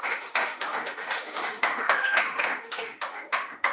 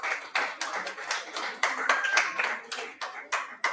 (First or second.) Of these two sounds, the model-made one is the first